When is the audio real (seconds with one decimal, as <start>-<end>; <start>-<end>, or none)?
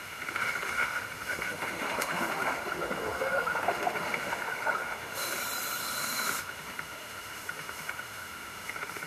5.4-6.0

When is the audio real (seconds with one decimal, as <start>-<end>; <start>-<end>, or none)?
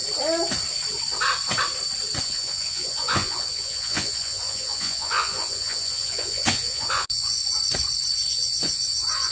0.0-2.2; 7.4-8.3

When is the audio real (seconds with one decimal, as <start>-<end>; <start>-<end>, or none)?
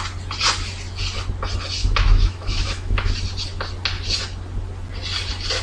0.0-1.8; 3.1-5.6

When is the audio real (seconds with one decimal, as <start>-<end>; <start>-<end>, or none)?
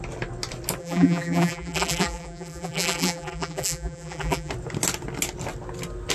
0.0-0.8; 4.5-6.1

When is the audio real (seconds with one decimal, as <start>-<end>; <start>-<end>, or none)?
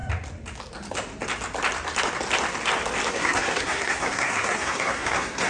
0.0-3.1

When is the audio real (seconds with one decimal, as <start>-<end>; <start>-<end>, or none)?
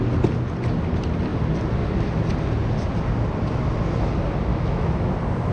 0.0-4.5; 5.1-5.5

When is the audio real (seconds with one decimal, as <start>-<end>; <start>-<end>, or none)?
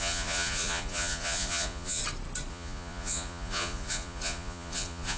2.0-2.5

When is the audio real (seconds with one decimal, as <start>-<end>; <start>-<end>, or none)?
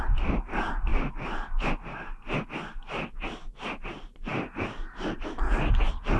0.0-6.2